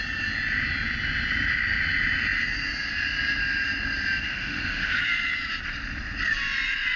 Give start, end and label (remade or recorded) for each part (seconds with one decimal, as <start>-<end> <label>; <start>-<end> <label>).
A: 0.0-4.3 recorded; 4.3-5.0 remade; 5.0-7.0 recorded

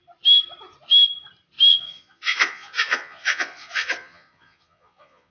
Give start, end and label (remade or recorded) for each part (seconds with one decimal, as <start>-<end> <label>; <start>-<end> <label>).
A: 0.0-1.7 recorded; 1.7-5.3 remade

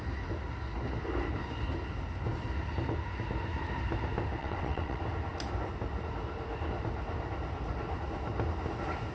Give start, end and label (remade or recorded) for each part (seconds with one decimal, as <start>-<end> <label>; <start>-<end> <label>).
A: 0.0-4.4 recorded; 4.4-5.0 remade; 5.0-9.1 recorded

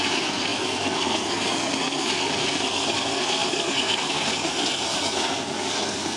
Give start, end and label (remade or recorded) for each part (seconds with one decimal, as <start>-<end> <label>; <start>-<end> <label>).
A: 0.0-6.2 remade

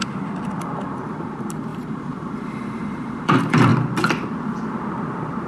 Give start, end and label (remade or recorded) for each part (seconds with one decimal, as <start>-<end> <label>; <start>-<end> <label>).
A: 0.0-0.6 recorded; 0.6-3.7 remade; 3.7-5.5 recorded

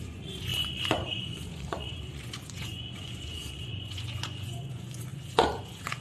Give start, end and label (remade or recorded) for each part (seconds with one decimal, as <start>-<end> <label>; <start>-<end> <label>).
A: 0.0-6.0 remade

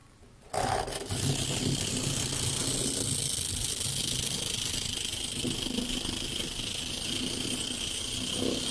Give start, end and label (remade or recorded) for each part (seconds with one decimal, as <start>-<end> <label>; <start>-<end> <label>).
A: 0.0-8.7 recorded